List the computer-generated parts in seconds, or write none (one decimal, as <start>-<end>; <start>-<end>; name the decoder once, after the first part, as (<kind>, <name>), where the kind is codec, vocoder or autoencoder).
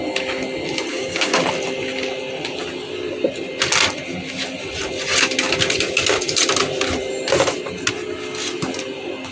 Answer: 0.9-1.4 (codec, DAC)